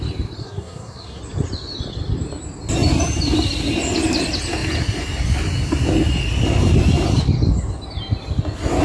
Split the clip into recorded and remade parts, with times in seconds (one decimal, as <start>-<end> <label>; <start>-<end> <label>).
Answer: 0.0-0.4 recorded; 0.4-1.2 remade; 1.2-8.8 recorded